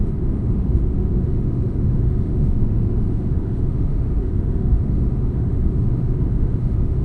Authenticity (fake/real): fake